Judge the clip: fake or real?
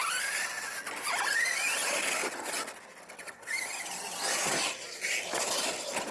real